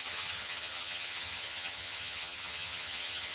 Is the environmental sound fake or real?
fake